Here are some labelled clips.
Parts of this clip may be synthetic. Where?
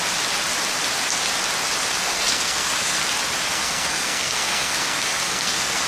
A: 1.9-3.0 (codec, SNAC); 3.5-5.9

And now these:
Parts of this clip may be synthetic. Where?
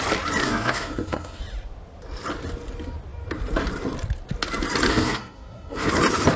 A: 0.4-1.4 (codec, SNAC); 4.9-5.9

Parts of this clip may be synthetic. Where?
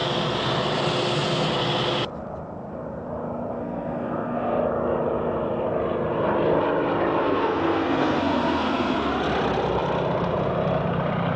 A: 3.5-4.6 (codec, SNAC); 7.2-9.1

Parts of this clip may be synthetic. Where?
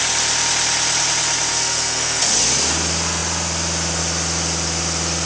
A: 1.5-2.2 (codec, SNAC)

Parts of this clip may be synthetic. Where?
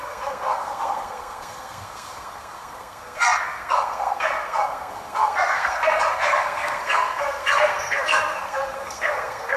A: 0.0-9.6 (codec, SNAC)